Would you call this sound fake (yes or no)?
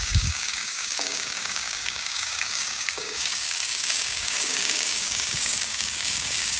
yes